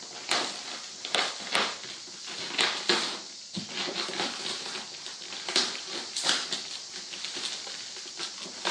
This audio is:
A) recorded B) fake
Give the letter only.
A